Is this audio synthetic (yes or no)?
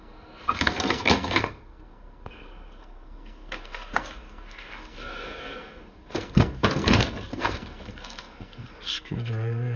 yes